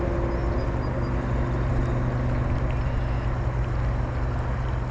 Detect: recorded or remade recorded